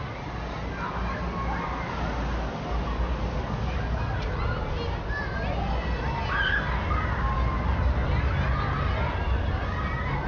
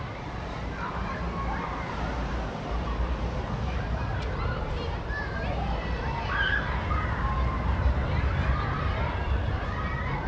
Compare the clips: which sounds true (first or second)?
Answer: first